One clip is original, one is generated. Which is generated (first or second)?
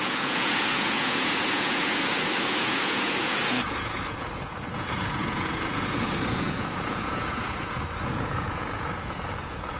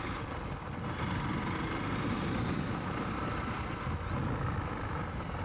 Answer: first